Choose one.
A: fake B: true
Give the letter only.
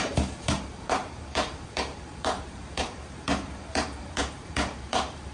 A